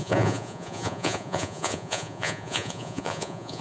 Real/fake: fake